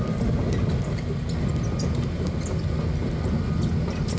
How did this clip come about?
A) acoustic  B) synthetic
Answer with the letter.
A